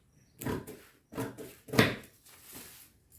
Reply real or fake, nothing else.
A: real